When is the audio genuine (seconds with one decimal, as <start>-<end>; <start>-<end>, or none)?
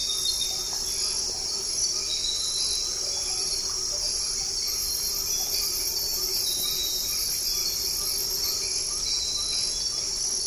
0.0-3.4; 4.1-6.1; 7.1-10.5